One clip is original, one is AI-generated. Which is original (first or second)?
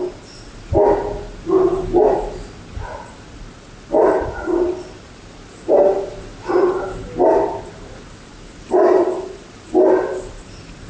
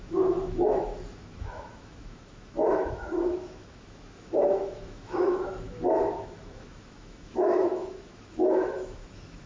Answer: first